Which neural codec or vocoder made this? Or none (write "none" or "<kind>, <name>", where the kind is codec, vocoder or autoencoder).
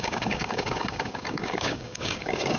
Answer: codec, DAC